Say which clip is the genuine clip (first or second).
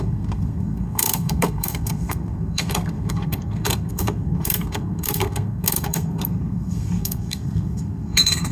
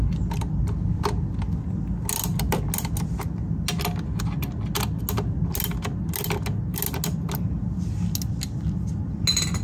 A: second